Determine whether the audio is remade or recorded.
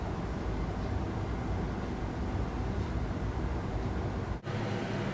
recorded